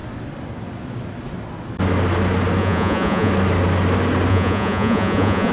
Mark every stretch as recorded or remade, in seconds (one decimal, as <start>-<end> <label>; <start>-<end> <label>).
0.0-2.6 recorded; 2.6-3.3 remade; 3.3-4.3 recorded; 4.3-5.5 remade